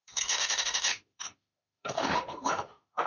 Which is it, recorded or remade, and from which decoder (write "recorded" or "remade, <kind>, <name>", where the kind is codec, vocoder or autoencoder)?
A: remade, autoencoder, DAC-VAE